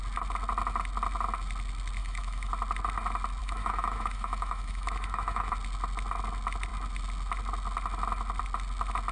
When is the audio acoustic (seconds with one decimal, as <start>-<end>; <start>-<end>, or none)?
0.0-2.0; 2.5-3.4; 5.5-9.1